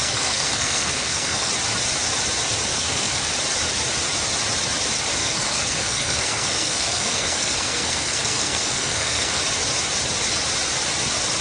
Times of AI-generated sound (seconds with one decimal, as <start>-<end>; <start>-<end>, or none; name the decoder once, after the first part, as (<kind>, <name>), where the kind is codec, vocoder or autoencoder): 0.0-1.5 (codec, SNAC); 2.7-3.3; 5.2-9.4